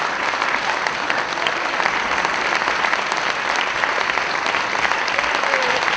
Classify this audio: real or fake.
real